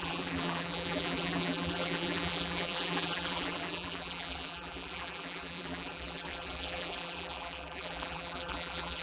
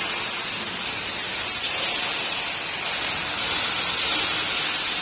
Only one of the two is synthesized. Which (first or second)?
first